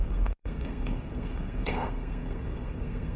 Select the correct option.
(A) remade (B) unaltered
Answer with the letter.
A